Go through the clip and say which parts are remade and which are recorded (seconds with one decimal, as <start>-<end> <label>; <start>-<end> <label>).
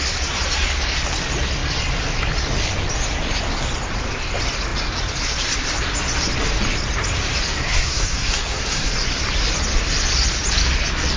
0.0-7.5 recorded; 7.5-8.9 remade; 8.9-11.2 recorded